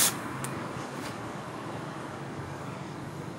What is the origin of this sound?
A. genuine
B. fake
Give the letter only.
B